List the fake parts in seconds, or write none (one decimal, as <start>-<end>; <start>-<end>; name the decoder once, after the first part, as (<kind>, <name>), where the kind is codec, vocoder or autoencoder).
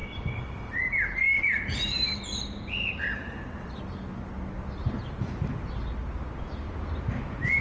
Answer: none